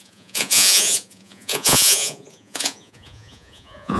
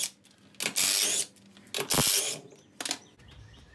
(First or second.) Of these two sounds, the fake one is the first